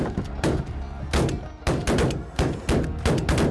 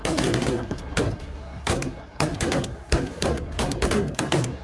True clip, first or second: first